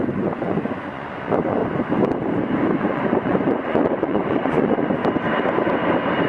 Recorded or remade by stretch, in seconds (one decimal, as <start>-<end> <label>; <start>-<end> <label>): 0.0-1.6 remade; 1.6-2.8 recorded; 2.8-5.0 remade; 5.0-6.3 recorded